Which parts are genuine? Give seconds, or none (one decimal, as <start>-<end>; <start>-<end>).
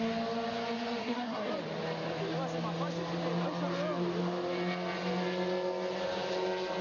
0.0-1.0; 1.5-6.8